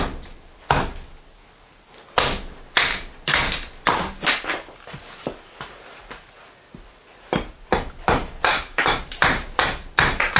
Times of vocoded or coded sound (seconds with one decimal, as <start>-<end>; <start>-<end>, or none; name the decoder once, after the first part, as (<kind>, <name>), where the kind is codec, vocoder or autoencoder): 8.5-9.0 (autoencoder, DAC-VAE)